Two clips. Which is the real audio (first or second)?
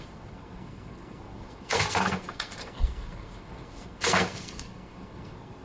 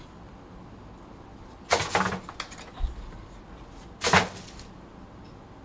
second